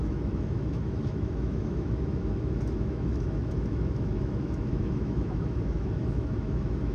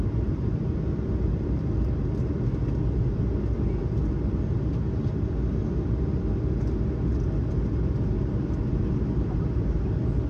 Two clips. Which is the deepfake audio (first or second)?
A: first